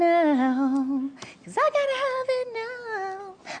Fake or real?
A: real